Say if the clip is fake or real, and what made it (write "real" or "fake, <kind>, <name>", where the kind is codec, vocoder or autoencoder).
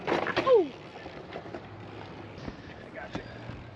real